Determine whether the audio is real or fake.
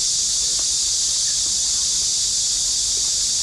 real